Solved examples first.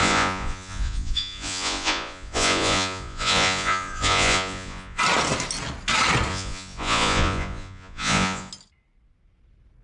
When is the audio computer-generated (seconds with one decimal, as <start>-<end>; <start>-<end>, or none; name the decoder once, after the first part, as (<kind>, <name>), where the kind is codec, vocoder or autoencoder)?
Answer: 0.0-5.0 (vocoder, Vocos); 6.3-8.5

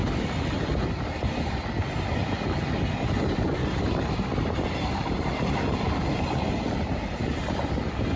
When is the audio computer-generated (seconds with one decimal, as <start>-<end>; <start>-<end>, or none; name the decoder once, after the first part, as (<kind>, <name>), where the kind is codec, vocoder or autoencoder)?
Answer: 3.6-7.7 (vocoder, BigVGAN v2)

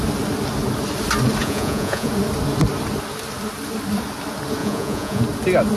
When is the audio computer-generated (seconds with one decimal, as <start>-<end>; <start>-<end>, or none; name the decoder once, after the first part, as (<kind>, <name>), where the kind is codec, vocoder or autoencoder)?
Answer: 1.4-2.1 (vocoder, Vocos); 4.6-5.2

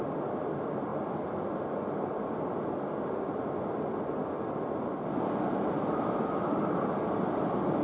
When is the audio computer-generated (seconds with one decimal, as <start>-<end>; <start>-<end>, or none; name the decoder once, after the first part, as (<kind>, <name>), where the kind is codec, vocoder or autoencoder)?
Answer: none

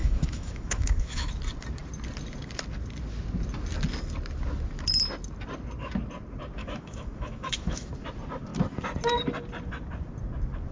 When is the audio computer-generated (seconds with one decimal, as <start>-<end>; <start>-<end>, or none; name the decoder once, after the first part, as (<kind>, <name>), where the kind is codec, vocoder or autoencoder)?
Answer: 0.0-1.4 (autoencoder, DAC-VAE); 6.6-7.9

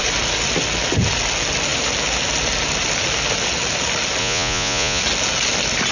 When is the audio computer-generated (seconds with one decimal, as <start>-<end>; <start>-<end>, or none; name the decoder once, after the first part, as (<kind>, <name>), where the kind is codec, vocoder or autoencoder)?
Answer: 4.2-5.0 (vocoder, Vocos)

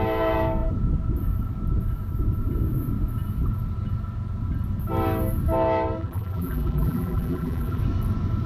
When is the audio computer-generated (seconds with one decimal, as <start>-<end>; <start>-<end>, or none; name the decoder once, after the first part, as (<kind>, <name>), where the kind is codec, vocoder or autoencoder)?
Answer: 6.0-7.8 (vocoder, BigVGAN v2)